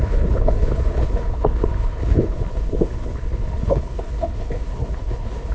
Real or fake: fake